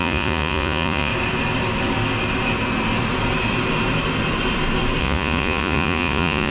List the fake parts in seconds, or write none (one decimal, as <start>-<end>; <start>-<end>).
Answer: 0.0-1.1; 5.0-6.5